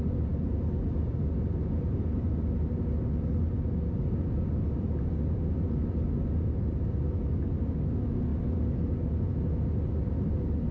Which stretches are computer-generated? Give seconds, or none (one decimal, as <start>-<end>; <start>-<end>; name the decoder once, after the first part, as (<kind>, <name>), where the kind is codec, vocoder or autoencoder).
none